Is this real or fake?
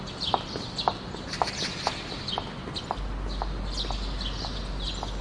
real